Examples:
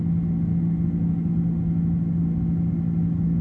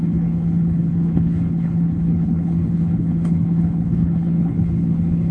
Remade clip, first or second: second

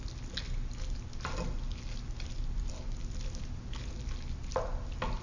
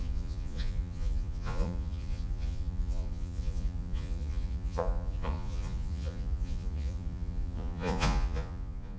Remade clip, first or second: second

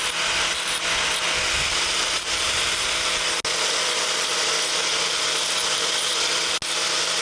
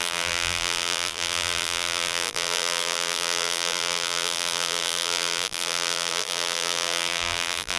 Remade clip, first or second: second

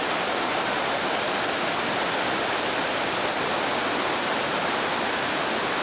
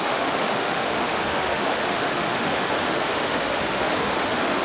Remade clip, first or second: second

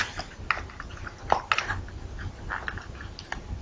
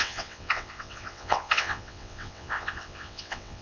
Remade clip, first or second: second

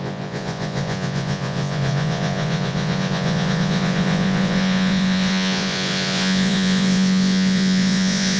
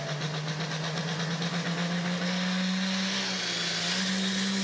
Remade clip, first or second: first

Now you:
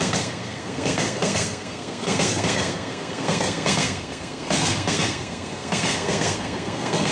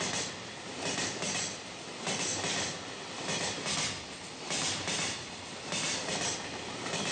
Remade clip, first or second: first